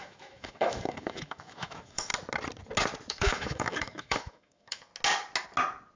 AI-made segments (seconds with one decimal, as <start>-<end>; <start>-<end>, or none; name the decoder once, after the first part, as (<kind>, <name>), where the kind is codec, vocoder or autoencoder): 0.0-2.1 (autoencoder, DAC-VAE); 3.1-4.9